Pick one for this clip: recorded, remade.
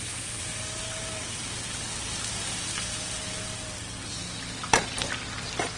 recorded